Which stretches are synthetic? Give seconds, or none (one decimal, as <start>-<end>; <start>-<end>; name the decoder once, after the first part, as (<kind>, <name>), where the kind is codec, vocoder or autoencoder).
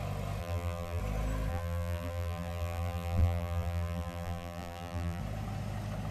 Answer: 0.4-1.0 (vocoder, BigVGAN v2); 1.5-5.2